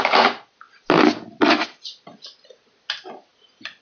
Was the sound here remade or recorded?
recorded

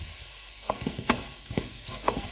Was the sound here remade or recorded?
remade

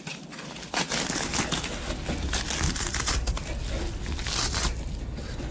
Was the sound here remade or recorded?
recorded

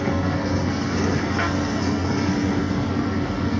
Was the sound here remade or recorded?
remade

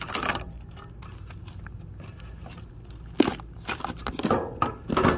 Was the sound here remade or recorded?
recorded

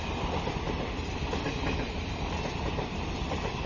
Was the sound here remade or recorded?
recorded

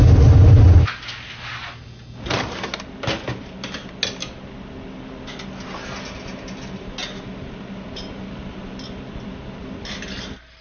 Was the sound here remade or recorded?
recorded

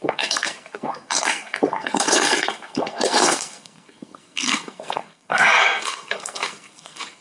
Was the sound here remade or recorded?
remade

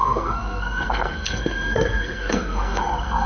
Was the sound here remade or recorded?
remade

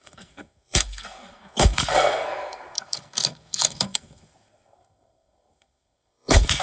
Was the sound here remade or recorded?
remade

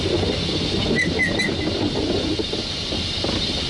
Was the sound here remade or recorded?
recorded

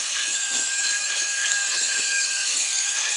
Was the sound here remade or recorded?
remade